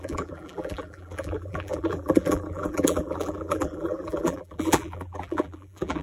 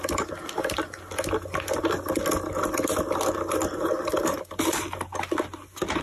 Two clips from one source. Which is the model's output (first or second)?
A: first